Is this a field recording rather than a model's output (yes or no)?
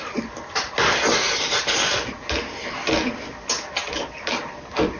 yes